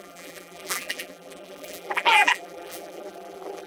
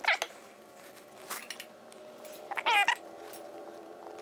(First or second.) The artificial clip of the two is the first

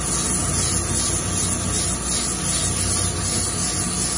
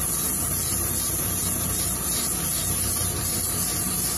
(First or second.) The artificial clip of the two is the second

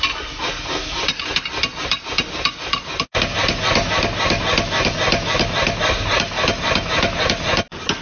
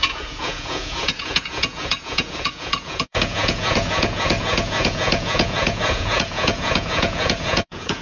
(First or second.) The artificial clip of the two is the second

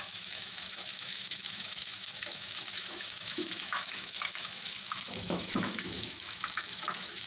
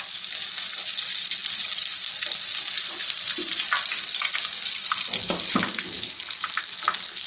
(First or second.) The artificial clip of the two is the first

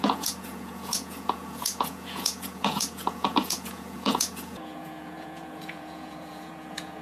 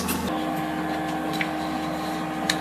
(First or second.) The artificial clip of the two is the first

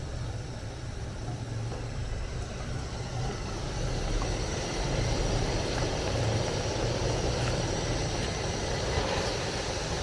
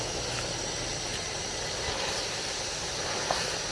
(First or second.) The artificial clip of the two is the first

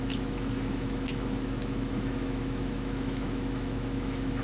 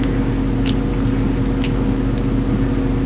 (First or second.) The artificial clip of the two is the first